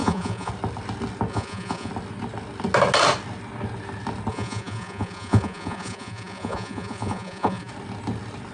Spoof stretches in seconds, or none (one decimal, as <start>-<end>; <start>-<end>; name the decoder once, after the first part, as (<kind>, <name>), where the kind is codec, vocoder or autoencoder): 0.0-0.5 (vocoder, Vocos); 1.3-1.9; 4.3-7.7